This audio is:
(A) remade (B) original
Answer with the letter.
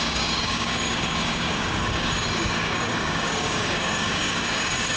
A